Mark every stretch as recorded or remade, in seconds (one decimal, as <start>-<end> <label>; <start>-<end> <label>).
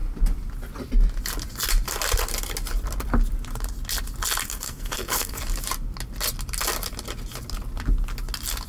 0.0-4.5 recorded; 4.5-5.4 remade; 5.4-8.7 recorded